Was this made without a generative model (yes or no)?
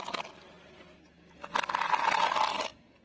yes